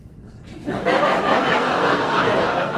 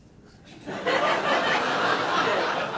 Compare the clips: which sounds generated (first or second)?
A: first